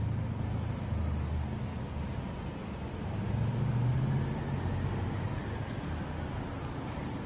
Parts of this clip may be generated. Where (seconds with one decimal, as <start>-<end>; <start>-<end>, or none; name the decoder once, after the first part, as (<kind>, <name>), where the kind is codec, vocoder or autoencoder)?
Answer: 1.7-2.2 (codec, DAC)